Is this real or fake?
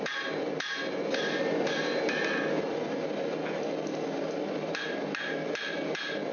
real